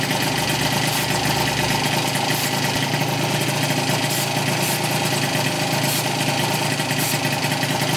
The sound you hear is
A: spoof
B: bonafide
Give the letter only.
B